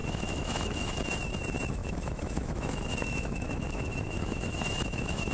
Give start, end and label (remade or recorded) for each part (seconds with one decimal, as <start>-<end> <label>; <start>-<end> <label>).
0.0-1.0 remade; 1.0-1.8 recorded; 1.8-5.3 remade